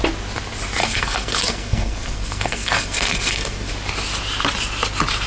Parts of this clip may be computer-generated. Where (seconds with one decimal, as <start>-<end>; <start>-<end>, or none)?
0.8-3.7